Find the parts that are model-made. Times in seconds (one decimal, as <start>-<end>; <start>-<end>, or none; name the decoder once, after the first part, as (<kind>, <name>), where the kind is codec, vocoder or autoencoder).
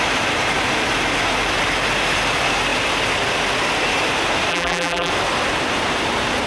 4.5-5.1 (vocoder, BigVGAN v2)